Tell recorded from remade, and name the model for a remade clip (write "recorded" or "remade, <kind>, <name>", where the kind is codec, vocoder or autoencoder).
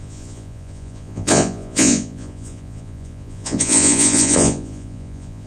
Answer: remade, vocoder, Vocos